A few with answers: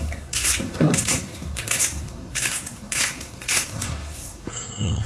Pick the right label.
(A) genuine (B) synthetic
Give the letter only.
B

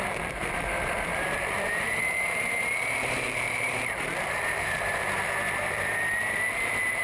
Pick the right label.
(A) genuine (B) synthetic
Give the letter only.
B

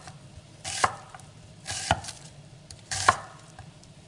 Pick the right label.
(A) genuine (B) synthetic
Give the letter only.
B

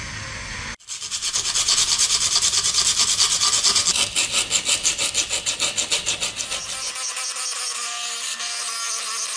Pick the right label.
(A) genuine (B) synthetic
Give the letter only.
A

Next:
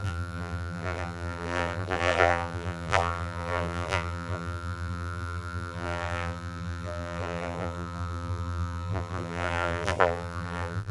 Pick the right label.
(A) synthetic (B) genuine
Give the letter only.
A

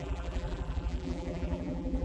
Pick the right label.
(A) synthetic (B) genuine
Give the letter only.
A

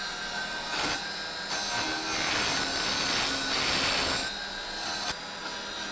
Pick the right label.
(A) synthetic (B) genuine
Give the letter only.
B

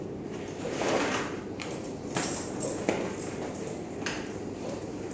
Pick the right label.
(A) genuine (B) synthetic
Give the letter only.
B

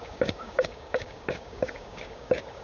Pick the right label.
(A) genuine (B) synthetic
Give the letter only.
B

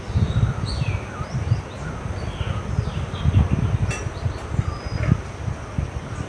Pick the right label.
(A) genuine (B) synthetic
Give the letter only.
A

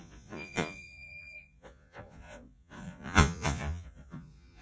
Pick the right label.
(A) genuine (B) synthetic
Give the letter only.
B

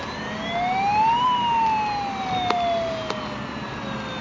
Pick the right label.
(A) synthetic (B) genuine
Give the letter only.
B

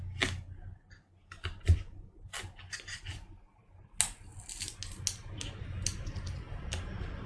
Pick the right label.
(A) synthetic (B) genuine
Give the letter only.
B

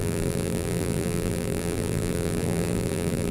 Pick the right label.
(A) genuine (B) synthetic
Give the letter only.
B